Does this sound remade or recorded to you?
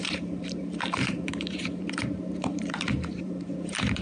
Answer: remade